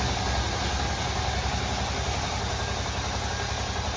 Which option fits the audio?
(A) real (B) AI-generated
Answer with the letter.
A